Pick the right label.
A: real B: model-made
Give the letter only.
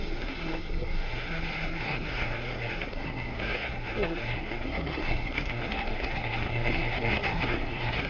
B